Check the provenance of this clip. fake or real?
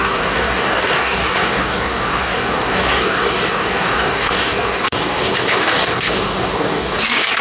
fake